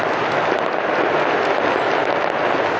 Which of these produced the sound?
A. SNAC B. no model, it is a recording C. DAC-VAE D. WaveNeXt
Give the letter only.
B